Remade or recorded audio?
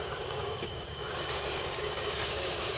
remade